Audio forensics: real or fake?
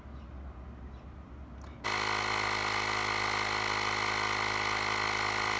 real